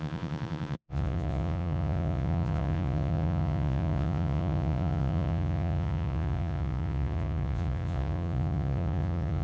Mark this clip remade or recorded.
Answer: remade